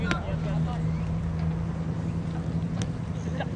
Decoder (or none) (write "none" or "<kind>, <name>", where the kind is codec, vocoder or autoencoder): none